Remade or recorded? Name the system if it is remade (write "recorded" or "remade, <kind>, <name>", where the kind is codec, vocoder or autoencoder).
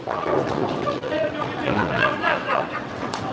remade, vocoder, WaveNeXt